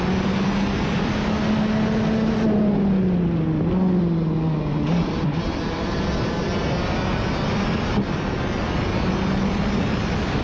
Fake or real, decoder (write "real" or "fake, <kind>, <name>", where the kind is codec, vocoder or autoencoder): real